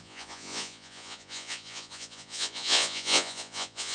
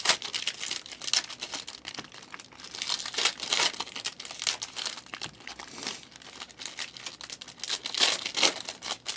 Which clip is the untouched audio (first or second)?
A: second